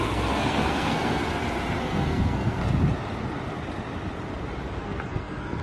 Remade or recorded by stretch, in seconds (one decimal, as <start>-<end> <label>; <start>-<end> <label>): 0.0-1.2 remade; 1.2-1.8 recorded; 1.8-2.6 remade; 2.6-4.8 recorded; 4.8-5.6 remade